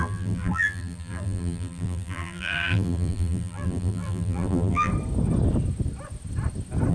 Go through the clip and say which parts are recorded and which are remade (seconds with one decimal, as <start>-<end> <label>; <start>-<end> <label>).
0.0-4.9 remade; 4.9-6.9 recorded